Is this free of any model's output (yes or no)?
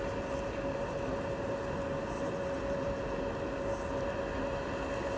yes